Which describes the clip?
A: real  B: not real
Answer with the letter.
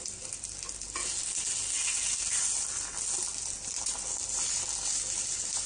A